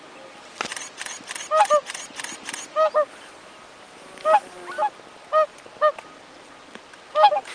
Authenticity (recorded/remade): recorded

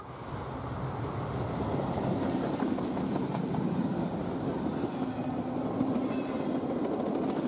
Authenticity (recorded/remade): recorded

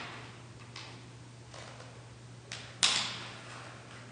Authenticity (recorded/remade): recorded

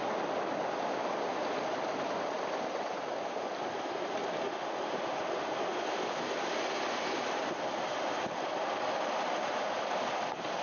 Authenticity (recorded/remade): recorded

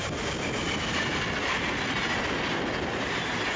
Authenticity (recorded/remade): recorded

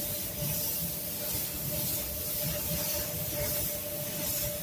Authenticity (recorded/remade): recorded